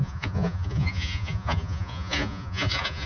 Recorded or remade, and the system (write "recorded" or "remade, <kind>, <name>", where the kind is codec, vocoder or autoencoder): remade, vocoder, Vocos